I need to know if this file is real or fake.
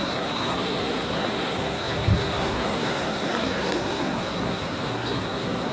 fake